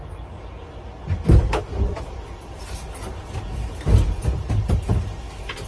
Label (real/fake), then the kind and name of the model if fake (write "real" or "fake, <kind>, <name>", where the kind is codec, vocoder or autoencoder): real